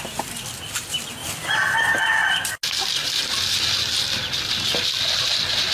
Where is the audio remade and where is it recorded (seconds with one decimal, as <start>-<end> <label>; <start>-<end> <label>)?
0.0-5.7 recorded